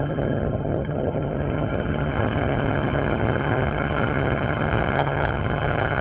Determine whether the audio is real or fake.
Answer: fake